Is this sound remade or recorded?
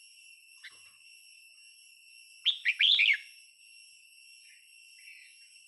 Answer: recorded